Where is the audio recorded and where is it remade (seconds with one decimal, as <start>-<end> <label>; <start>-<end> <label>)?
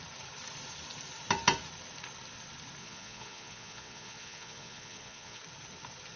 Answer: 0.0-2.8 recorded; 2.8-5.4 remade; 5.4-6.2 recorded